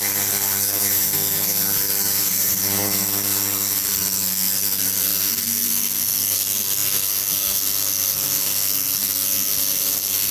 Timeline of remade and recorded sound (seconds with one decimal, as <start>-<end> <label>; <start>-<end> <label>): 0.0-10.3 remade